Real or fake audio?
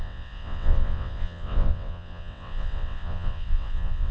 fake